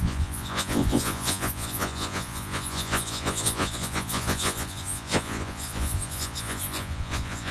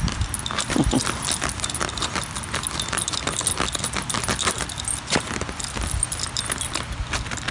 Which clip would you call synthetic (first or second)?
first